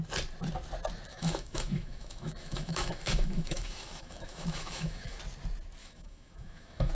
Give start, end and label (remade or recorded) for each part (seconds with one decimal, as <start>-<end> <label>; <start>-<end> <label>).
0.0-1.1 recorded; 1.1-5.2 remade; 5.2-5.8 recorded; 5.8-6.9 remade